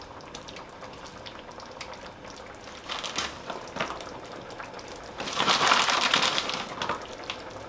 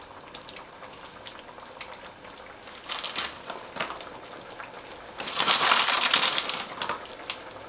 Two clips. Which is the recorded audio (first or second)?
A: second